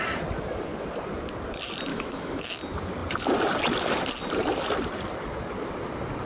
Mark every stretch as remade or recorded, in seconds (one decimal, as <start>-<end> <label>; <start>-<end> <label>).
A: 0.0-1.9 recorded; 1.9-2.6 remade; 2.6-6.3 recorded